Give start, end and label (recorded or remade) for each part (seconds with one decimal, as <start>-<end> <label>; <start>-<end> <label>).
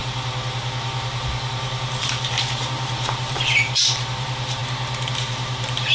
0.0-4.6 remade; 4.6-5.1 recorded; 5.1-5.9 remade